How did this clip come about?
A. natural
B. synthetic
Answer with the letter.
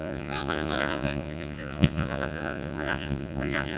B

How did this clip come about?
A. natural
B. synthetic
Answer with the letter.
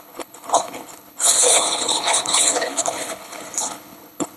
B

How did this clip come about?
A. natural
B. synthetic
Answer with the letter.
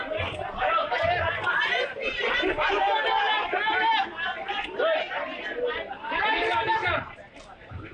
A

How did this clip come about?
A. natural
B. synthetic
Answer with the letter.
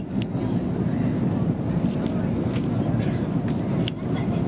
A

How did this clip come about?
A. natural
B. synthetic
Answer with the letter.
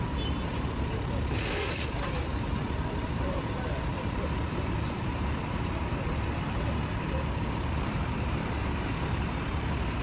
B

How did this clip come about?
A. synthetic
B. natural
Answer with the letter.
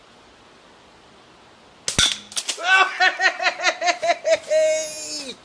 B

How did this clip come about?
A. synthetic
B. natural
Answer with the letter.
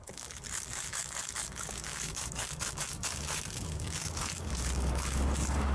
A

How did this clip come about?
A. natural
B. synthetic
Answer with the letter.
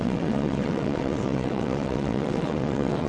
B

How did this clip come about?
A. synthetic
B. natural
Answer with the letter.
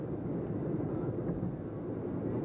B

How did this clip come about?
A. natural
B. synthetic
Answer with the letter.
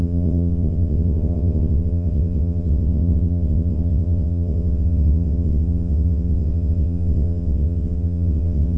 B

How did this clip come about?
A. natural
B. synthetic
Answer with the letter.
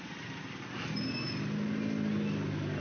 A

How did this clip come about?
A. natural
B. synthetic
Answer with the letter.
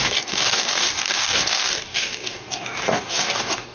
B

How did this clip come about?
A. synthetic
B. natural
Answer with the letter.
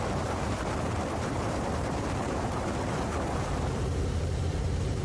A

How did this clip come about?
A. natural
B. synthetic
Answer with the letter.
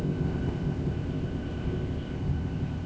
B